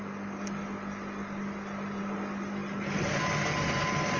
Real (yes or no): yes